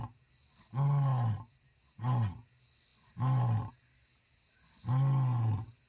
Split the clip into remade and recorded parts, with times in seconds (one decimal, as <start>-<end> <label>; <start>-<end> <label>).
0.0-5.9 recorded